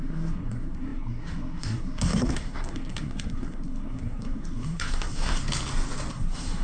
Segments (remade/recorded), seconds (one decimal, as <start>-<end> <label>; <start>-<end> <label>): 0.0-5.4 remade; 5.4-6.1 recorded; 6.1-6.6 remade

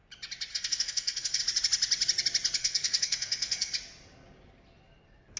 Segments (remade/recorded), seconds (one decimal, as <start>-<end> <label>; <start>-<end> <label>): 0.0-0.5 recorded; 0.5-1.4 remade; 1.4-2.6 recorded; 2.6-3.7 remade; 3.7-5.4 recorded

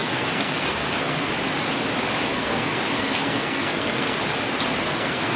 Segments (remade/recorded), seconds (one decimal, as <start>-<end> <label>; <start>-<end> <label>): 0.0-1.3 remade; 1.3-2.2 recorded; 2.2-4.2 remade; 4.2-4.8 recorded; 4.8-5.4 remade

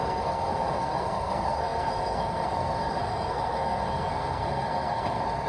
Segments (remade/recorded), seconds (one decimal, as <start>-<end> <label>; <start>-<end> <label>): 0.0-5.5 remade

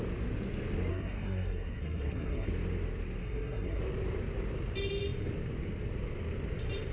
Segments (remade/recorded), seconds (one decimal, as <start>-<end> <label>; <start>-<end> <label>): 0.0-0.9 recorded; 0.9-2.5 remade; 2.5-3.2 recorded; 3.2-3.8 remade; 3.8-6.9 recorded

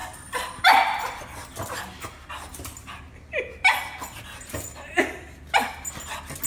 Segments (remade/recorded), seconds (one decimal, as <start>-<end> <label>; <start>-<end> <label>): 0.0-6.5 recorded

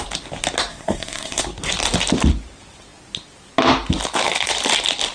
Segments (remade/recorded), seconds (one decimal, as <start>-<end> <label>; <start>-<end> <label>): 0.0-0.7 recorded; 0.7-1.4 remade; 1.4-5.1 recorded